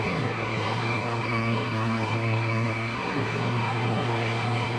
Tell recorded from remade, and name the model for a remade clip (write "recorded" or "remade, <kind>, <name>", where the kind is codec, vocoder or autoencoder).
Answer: remade, codec, SNAC